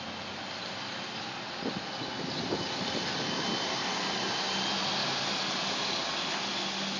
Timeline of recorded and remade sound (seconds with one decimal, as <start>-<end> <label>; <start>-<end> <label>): 0.0-7.0 recorded